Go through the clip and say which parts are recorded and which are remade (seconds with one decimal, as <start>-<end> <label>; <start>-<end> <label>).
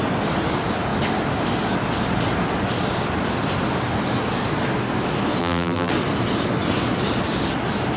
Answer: 0.0-5.4 recorded; 5.4-5.9 remade; 5.9-8.0 recorded